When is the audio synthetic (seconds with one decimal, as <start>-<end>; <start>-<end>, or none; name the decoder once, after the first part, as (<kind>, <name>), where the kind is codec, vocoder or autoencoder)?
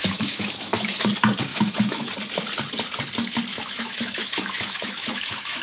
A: 0.0-1.1 (autoencoder, DAC-VAE); 1.5-2.1; 3.5-5.6